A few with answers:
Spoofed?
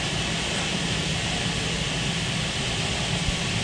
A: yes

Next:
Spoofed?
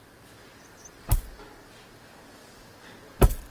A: no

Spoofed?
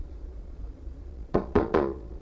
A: yes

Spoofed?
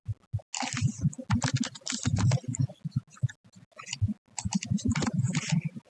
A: no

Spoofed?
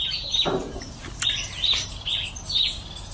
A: no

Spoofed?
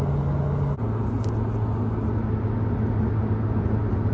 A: no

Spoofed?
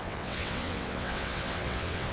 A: yes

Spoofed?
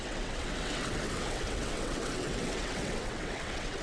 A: yes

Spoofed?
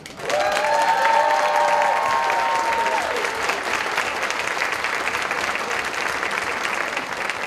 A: no